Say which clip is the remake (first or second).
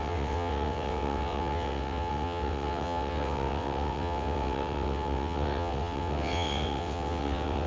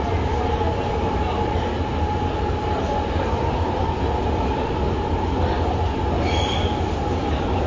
first